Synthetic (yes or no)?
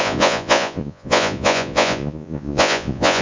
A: yes